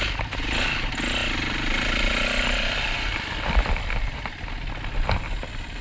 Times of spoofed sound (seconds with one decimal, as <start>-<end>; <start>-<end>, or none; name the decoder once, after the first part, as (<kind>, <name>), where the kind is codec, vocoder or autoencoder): 1.2-4.7 (vocoder, BigVGAN v2)